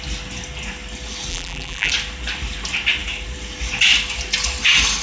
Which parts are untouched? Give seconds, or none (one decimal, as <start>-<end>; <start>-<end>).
0.0-1.3; 1.9-5.0

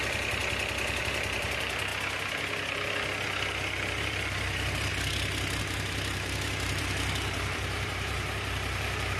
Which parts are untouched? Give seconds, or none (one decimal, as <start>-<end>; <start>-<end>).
0.4-1.0; 1.9-4.0; 4.9-5.6

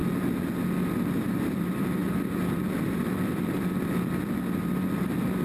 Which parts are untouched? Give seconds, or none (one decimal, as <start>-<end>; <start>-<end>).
0.0-0.9